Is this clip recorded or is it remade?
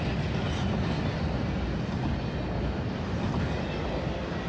recorded